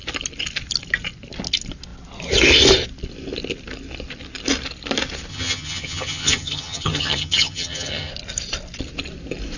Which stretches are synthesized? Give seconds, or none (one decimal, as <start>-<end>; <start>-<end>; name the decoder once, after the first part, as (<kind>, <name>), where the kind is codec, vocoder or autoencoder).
5.3-8.1 (vocoder, HiFi-GAN)